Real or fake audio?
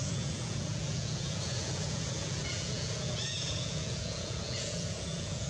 fake